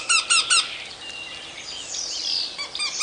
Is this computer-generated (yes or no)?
no